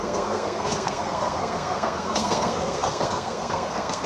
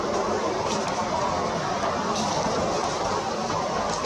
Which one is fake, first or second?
first